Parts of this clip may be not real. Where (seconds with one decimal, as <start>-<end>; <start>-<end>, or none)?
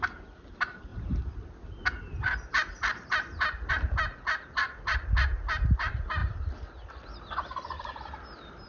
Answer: none